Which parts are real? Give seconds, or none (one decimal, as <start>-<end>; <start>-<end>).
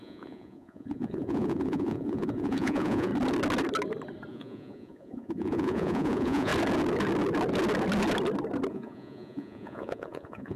3.1-4.3; 6.5-8.7